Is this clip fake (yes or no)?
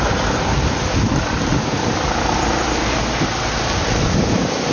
yes